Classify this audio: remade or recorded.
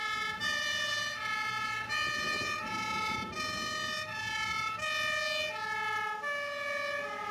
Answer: recorded